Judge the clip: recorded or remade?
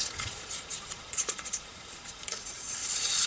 remade